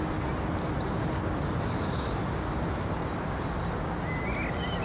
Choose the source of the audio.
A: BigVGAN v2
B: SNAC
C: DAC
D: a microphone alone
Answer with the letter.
D